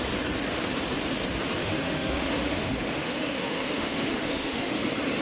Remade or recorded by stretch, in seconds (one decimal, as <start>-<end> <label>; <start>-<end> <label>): 0.0-1.6 recorded; 1.6-4.7 remade; 4.7-5.2 recorded